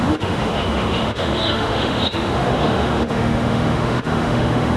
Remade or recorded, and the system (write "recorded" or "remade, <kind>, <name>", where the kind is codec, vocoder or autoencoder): remade, autoencoder, DAC-VAE